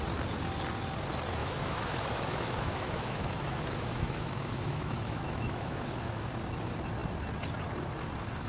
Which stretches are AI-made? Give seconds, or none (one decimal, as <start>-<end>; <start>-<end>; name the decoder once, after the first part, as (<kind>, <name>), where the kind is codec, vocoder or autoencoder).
1.4-6.3 (autoencoder, DAC-VAE)